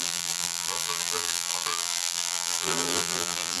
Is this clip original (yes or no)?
no